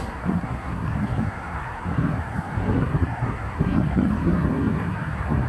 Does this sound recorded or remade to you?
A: remade